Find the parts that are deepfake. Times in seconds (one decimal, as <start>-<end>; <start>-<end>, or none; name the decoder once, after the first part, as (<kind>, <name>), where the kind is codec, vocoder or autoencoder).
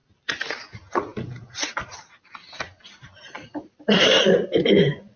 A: 1.1-4.2 (vocoder, BigVGAN v2)